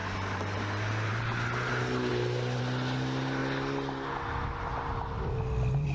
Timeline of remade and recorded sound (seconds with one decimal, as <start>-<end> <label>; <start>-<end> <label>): 0.0-1.2 remade; 1.2-5.9 recorded